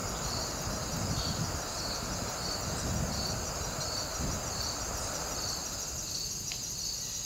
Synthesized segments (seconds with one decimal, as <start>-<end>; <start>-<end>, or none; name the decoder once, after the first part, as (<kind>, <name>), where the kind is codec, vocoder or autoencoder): none